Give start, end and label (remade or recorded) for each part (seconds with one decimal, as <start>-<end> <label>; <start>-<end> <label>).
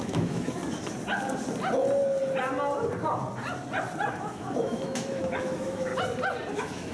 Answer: 0.0-0.6 remade; 0.6-4.1 recorded; 4.1-5.9 remade; 5.9-6.5 recorded; 6.5-6.9 remade